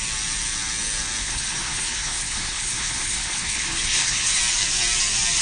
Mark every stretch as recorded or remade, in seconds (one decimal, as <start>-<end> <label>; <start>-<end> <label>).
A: 0.0-1.2 recorded; 1.2-4.4 remade; 4.4-5.4 recorded